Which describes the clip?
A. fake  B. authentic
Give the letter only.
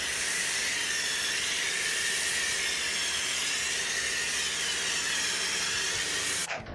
B